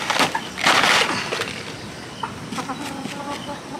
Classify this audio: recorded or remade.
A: recorded